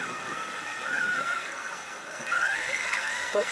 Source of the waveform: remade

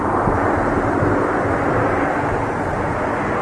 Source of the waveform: recorded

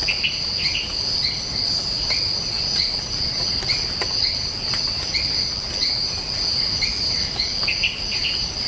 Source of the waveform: recorded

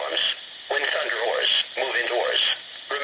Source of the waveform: recorded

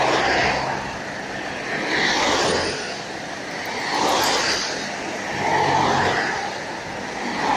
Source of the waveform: recorded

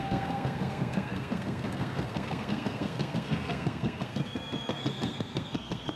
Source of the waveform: remade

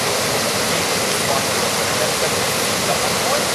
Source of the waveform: recorded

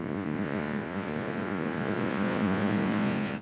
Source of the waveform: remade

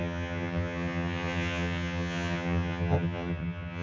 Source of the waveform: remade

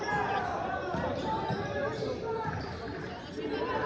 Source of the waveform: recorded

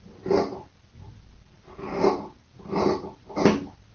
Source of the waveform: recorded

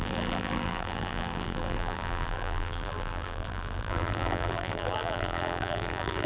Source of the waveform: remade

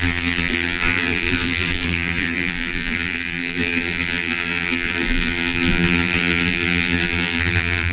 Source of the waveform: remade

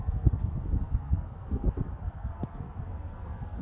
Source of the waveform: remade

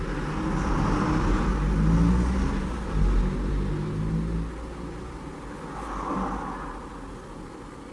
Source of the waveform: recorded